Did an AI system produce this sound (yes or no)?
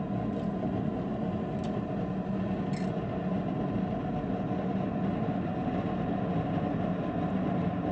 no